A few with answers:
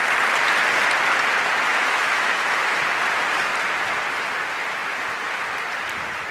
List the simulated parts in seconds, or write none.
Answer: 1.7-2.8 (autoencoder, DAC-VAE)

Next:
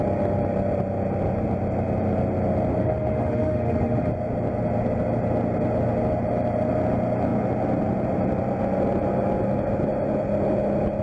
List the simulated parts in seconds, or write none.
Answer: 2.8-4.1 (autoencoder, DAC-VAE)

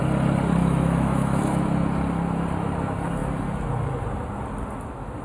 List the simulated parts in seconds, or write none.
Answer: 0.6-1.4 (autoencoder, DAC-VAE)

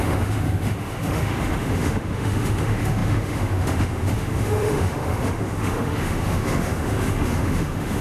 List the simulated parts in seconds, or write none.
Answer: 0.0-8.0 (autoencoder, DAC-VAE)

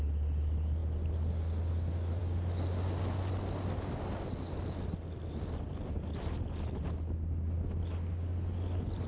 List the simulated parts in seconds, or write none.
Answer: none

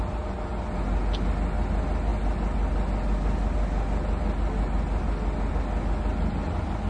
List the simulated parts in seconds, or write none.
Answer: none

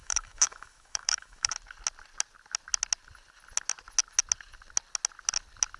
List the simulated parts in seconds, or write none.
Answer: 0.0-1.5 (autoencoder, DAC-VAE)

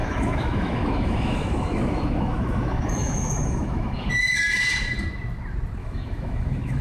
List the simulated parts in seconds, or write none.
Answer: 0.0-4.1 (autoencoder, DAC-VAE); 5.8-6.8